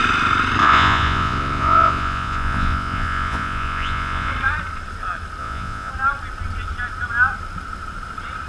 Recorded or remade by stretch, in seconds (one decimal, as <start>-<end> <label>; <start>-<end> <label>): 0.0-0.6 recorded; 0.6-4.3 remade; 4.3-5.4 recorded; 5.4-5.9 remade; 5.9-8.5 recorded